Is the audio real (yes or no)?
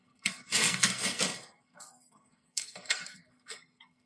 no